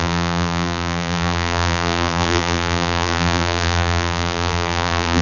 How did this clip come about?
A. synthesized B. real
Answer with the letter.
A